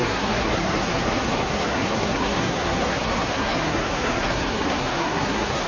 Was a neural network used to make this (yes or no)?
yes